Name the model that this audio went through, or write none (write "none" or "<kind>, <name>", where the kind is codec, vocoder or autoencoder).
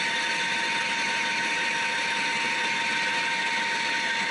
none